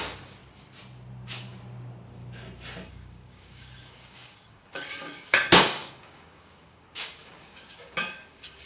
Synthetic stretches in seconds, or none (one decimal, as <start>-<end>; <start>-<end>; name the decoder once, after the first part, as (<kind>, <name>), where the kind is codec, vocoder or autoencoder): 0.0-0.4 (codec, DAC); 2.9-8.7